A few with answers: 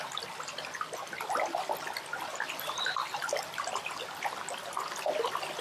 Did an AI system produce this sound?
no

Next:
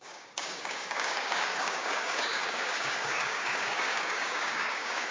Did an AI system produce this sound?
yes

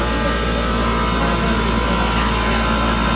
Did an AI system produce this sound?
no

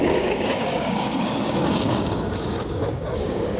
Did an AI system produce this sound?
yes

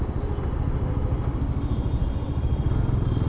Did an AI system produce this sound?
no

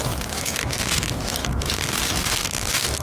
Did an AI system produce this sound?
yes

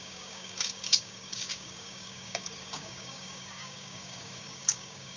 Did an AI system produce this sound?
yes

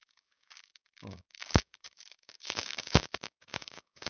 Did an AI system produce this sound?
yes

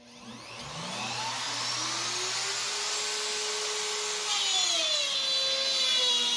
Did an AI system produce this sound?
no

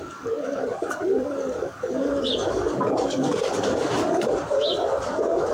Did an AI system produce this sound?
yes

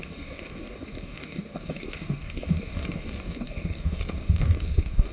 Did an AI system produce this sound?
yes